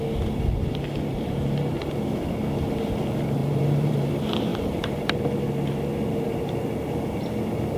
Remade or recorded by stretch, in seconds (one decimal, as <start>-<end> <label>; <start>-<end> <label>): 0.0-1.1 recorded; 1.1-1.7 remade; 1.7-3.4 recorded; 3.4-4.1 remade; 4.1-4.5 recorded; 4.5-5.2 remade; 5.2-7.8 recorded